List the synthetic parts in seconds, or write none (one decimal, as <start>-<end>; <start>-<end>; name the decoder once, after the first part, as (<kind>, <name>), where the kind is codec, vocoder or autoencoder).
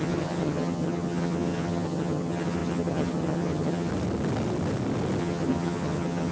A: 0.0-3.9 (vocoder, HiFi-GAN); 5.2-6.3